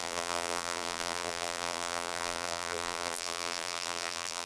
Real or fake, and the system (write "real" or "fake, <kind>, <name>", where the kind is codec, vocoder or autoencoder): fake, vocoder, BigVGAN v2